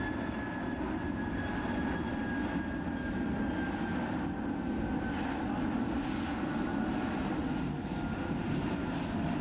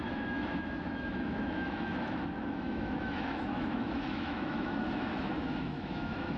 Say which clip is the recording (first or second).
first